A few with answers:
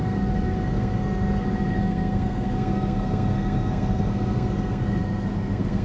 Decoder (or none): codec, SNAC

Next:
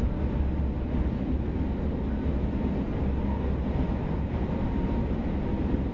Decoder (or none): none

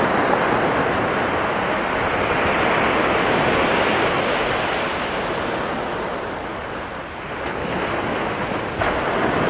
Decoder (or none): none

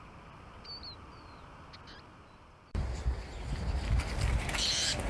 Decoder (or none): none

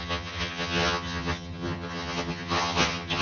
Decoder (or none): vocoder, HiFi-GAN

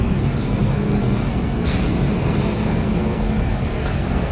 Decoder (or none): codec, SNAC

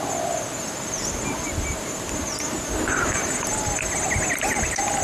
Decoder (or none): none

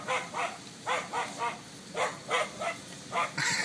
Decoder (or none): none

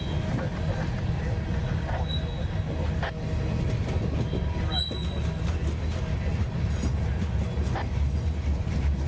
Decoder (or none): none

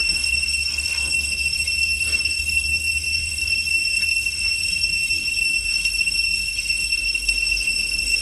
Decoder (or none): codec, SNAC